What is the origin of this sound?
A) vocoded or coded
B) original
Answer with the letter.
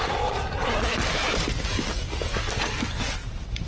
B